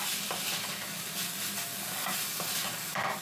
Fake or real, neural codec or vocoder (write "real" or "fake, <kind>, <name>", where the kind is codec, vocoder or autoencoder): real